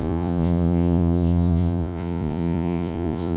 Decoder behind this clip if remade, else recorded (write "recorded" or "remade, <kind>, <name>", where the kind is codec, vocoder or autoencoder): remade, vocoder, Vocos